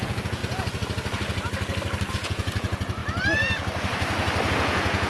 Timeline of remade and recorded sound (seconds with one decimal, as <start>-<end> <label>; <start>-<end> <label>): 0.0-0.4 remade; 0.4-2.1 recorded; 2.1-3.0 remade; 3.0-4.5 recorded; 4.5-5.1 remade